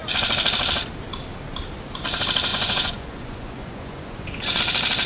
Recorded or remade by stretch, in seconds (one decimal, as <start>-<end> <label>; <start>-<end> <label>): 0.0-2.5 recorded; 2.5-4.6 remade; 4.6-5.1 recorded